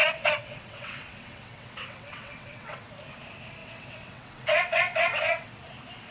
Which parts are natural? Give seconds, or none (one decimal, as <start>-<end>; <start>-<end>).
2.9-3.6; 5.5-6.1